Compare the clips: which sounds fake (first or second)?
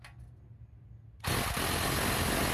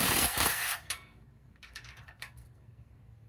second